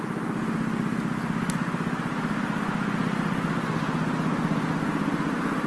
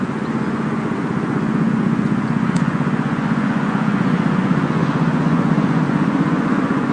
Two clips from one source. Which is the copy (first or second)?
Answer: second